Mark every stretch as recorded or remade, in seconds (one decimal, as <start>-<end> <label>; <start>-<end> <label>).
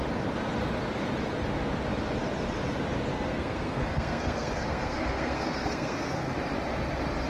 0.0-3.1 recorded; 3.1-6.3 remade; 6.3-7.3 recorded